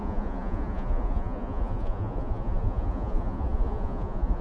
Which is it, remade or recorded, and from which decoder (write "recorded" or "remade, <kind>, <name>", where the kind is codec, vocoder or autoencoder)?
remade, vocoder, Vocos